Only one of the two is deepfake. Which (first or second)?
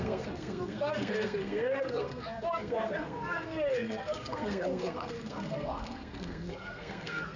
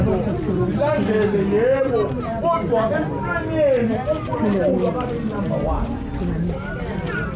first